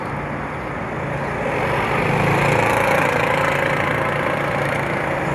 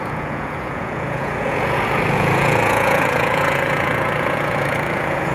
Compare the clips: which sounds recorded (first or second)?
first